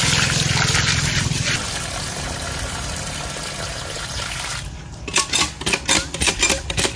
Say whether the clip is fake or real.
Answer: real